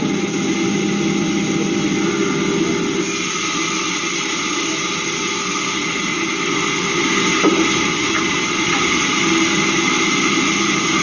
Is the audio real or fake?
real